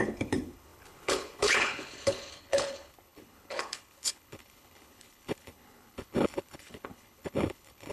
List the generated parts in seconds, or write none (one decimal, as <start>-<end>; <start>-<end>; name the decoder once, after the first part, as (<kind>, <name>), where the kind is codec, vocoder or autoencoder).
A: 0.0-7.9 (codec, HILCodec)